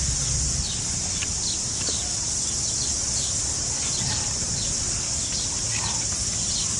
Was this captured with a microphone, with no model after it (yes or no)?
yes